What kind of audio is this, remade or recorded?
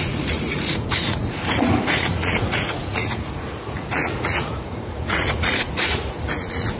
remade